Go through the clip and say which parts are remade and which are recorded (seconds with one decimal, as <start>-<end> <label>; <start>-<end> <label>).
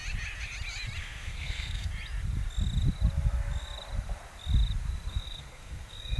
0.0-1.0 recorded; 1.0-1.9 remade; 1.9-5.1 recorded; 5.1-6.2 remade